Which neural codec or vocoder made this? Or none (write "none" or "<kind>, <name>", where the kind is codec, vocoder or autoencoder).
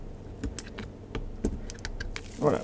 none